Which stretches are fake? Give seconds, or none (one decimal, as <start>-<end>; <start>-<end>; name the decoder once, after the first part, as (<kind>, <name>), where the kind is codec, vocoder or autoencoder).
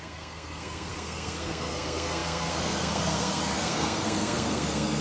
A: 0.0-5.0 (codec, SNAC)